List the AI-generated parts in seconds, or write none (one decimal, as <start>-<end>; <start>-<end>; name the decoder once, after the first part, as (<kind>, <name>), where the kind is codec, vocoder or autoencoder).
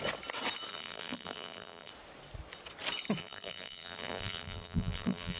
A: 0.7-1.9 (vocoder, BigVGAN v2); 3.2-5.4